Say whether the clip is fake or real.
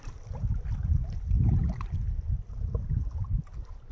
real